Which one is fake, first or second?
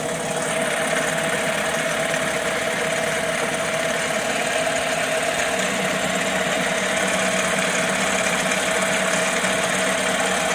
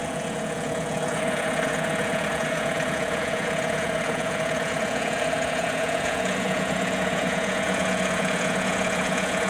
second